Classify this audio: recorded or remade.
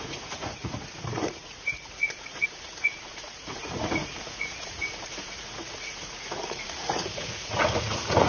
remade